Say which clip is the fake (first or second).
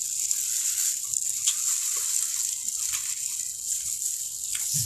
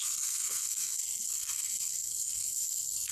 second